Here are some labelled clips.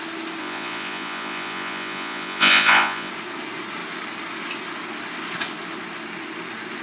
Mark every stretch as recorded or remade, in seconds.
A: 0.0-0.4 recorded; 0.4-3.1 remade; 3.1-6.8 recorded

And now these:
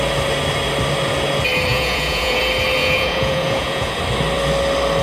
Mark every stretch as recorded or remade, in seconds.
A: 0.0-1.7 recorded; 1.7-2.4 remade; 2.4-2.8 recorded; 2.8-4.0 remade; 4.0-5.0 recorded